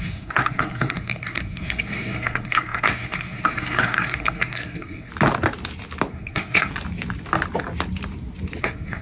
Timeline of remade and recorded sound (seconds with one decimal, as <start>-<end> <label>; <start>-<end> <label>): 0.0-5.1 remade; 5.1-6.1 recorded; 6.1-6.7 remade; 6.7-8.6 recorded; 8.6-9.0 remade